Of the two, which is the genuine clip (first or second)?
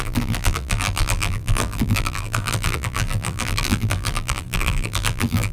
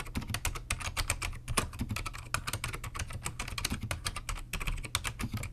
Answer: second